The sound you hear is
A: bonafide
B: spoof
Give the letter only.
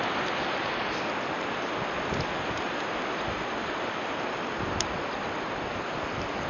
A